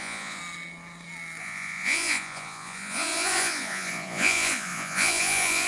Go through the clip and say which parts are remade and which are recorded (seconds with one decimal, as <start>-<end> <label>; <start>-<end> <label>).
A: 0.0-0.4 remade; 0.4-1.4 recorded; 1.4-5.7 remade